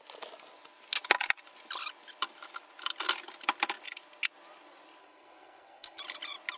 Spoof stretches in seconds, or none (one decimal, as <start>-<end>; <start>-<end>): 5.0-6.0

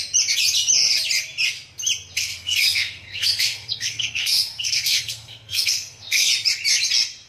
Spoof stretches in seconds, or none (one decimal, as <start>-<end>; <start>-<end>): 2.2-6.3

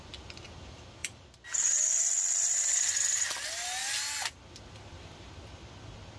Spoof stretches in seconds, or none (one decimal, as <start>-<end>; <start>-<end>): none